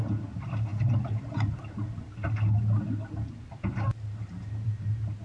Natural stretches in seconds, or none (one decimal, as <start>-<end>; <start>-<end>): 0.0-5.2